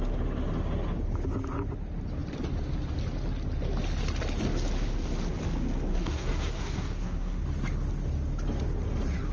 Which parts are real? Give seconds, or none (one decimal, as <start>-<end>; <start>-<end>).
0.0-5.9; 7.4-9.3